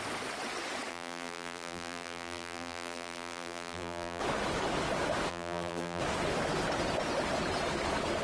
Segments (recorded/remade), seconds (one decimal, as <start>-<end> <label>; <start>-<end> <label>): 0.0-0.9 recorded; 0.9-4.2 remade; 4.2-5.3 recorded; 5.3-6.0 remade; 6.0-8.2 recorded